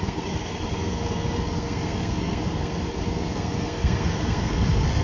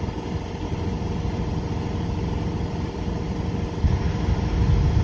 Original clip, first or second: second